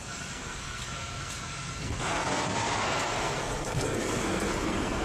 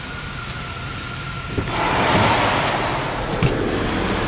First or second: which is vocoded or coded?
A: first